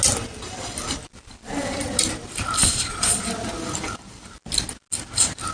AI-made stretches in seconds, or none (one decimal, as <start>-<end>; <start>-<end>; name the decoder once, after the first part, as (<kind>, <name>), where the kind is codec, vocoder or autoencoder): 2.6-3.2 (vocoder, Vocos)